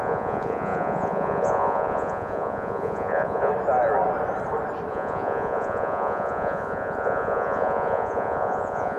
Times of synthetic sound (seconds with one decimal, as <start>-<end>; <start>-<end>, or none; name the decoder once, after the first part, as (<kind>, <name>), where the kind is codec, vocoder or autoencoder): 0.0-3.5 (vocoder, Vocos); 4.9-9.0